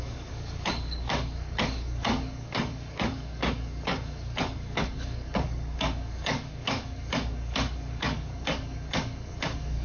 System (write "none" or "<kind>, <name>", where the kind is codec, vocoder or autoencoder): codec, DAC